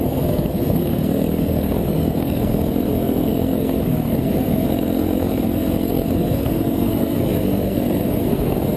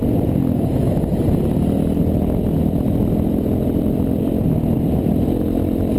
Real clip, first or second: second